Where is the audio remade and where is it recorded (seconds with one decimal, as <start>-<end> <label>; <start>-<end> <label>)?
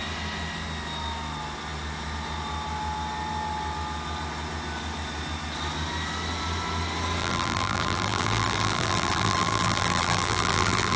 0.0-7.2 recorded; 7.2-11.0 remade